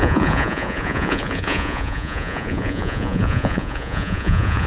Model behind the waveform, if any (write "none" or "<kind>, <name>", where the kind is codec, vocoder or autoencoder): vocoder, Vocos